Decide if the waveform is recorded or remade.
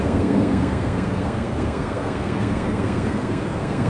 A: remade